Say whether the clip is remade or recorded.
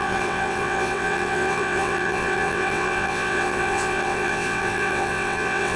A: remade